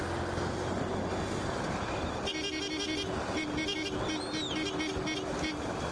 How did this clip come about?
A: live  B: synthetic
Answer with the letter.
A